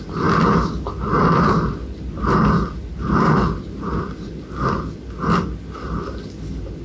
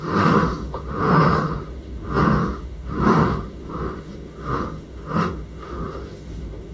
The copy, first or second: second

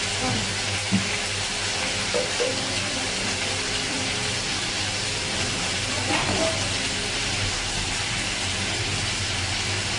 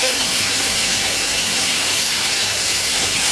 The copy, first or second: second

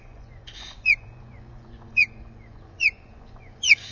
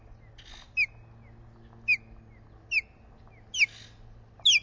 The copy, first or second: first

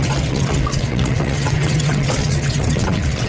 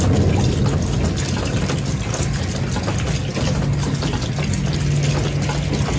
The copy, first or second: first